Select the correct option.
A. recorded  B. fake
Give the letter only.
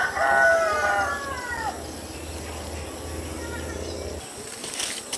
A